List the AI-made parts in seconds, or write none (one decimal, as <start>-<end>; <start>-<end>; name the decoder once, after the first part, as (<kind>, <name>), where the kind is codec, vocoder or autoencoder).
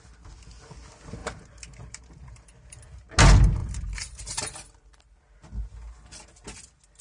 1.2-2.8 (vocoder, BigVGAN v2); 3.6-4.4